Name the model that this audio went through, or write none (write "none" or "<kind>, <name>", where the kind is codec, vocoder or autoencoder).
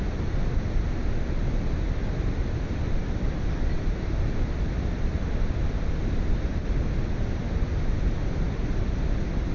vocoder, BigVGAN v2